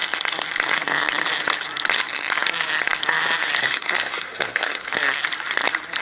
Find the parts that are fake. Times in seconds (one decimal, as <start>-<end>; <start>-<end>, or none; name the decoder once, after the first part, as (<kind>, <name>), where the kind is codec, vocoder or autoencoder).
3.6-4.9 (codec, SNAC)